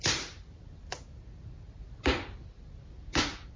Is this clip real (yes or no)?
yes